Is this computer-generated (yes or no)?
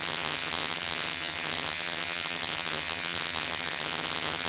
yes